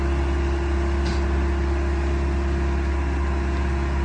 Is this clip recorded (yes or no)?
yes